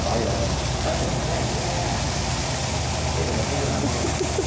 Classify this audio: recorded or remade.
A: recorded